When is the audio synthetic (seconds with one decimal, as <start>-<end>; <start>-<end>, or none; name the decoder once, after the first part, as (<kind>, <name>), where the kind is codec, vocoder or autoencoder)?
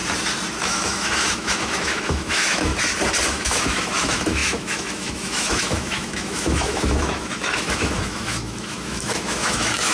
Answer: 0.6-2.7 (autoencoder, DAC-VAE); 3.3-9.9